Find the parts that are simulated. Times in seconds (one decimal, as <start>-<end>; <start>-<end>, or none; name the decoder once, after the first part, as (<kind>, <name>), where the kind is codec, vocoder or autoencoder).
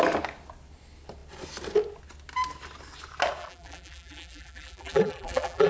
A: 3.4-5.7 (vocoder, BigVGAN v2)